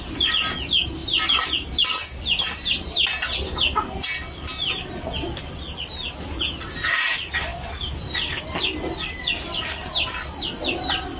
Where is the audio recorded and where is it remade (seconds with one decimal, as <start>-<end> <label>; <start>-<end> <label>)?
0.0-11.2 recorded